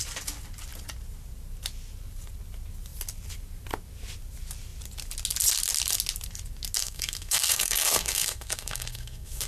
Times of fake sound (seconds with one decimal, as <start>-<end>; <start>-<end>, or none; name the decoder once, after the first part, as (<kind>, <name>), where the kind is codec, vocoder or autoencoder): 6.8-9.5 (codec, SNAC)